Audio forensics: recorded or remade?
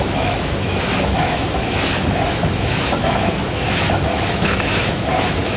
remade